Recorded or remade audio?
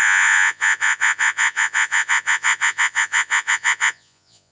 remade